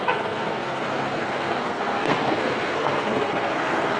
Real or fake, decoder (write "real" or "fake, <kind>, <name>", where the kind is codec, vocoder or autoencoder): fake, codec, SNAC